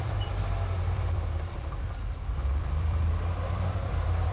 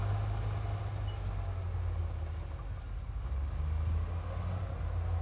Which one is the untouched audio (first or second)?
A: second